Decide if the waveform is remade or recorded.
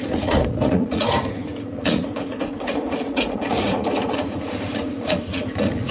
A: remade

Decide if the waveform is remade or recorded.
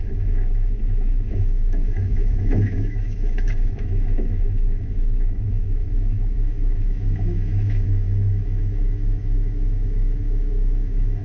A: remade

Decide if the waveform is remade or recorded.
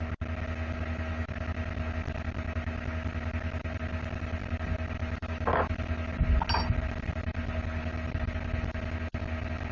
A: recorded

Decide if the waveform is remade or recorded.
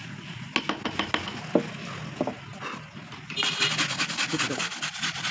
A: recorded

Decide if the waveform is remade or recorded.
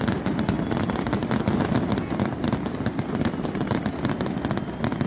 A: recorded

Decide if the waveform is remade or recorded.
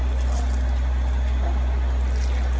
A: recorded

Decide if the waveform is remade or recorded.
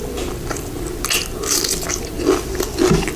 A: recorded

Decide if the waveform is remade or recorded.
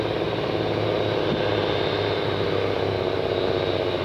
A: recorded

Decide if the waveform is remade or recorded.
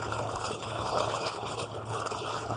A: remade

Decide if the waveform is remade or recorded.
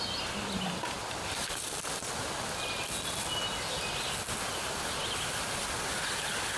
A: recorded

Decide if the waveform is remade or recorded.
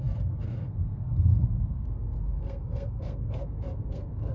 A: remade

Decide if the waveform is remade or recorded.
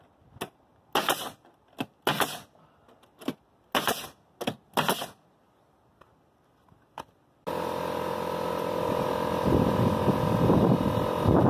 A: recorded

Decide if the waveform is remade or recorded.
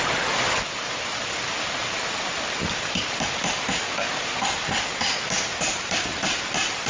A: recorded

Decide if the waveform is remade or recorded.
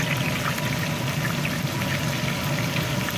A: recorded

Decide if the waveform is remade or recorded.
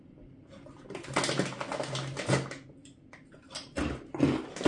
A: recorded